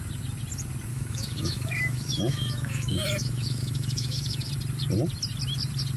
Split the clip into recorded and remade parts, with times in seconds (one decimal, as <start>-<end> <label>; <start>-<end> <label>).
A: 0.0-0.9 recorded; 0.9-4.5 remade; 4.5-6.0 recorded